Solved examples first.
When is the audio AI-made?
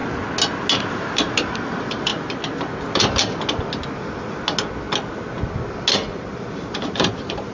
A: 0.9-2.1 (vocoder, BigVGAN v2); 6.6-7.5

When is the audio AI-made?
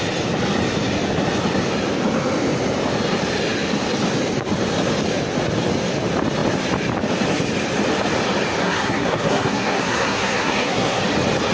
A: 8.6-11.0 (codec, SNAC)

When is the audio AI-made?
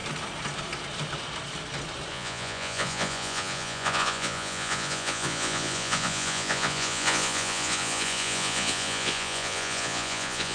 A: 2.1-10.5 (vocoder, Vocos)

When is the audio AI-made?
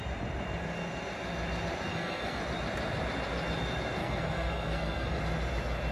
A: 1.9-2.4 (codec, SNAC); 4.0-5.2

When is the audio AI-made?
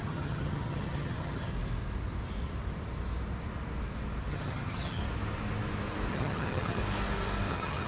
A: 0.0-1.5 (vocoder, HiFi-GAN); 4.3-5.0; 6.1-6.8; 7.5-7.9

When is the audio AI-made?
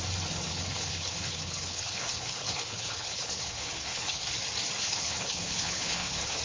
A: 0.5-4.3 (codec, HILCodec); 4.8-6.4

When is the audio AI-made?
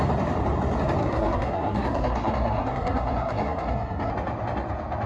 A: 1.0-4.1 (codec, SNAC)